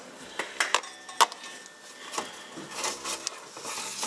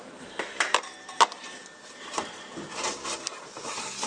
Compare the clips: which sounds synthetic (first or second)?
second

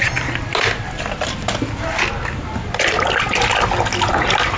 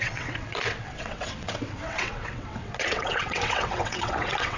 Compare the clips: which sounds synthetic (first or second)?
second